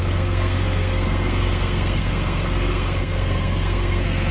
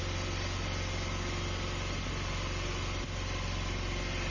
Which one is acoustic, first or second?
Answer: second